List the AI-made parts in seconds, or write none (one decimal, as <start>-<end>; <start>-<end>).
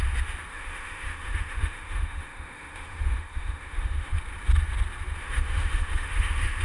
0.5-4.1; 5.2-6.6